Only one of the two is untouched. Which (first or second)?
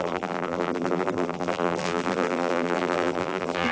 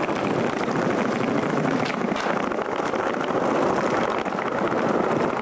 second